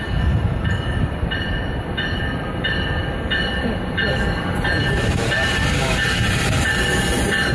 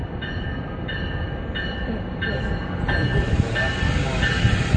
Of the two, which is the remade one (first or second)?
first